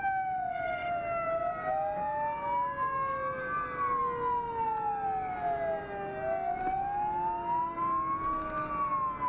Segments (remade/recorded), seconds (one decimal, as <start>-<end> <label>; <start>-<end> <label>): 0.0-9.3 recorded